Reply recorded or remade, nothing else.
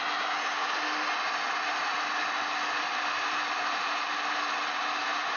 recorded